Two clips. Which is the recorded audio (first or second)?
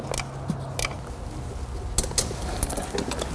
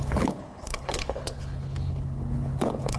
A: first